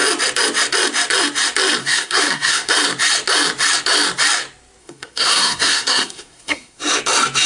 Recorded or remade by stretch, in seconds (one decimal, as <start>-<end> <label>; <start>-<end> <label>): 0.0-1.8 recorded; 1.8-2.7 remade; 2.7-4.8 recorded; 4.8-6.8 remade; 6.8-7.5 recorded